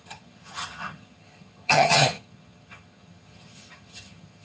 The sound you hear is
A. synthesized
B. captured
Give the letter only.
A